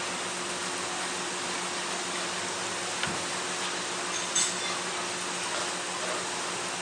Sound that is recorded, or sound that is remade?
recorded